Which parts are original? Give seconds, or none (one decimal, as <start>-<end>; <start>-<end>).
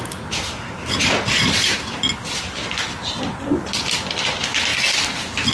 0.0-1.0; 2.7-5.5